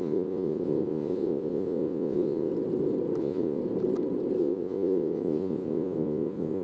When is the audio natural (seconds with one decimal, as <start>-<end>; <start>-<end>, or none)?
2.5-3.2; 3.6-4.4